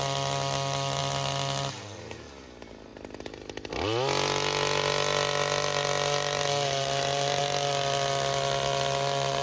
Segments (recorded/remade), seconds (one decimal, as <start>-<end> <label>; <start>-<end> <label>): 0.0-9.4 recorded